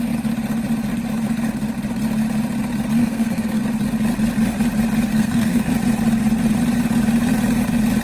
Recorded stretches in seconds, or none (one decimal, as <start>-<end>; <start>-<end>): 0.0-3.0; 3.6-5.1; 5.7-8.0